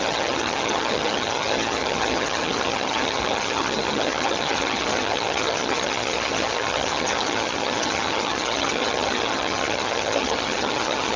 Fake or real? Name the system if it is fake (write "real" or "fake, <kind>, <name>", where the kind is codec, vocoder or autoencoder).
fake, vocoder, HiFi-GAN